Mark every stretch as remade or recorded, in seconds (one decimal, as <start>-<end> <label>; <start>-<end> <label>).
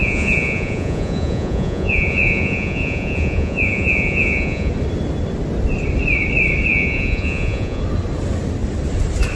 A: 0.0-4.7 remade; 4.7-6.7 recorded; 6.7-7.8 remade; 7.8-9.4 recorded